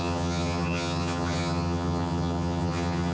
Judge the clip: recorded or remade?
remade